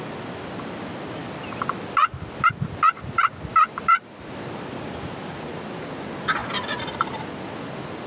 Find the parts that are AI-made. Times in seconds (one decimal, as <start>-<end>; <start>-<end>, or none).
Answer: none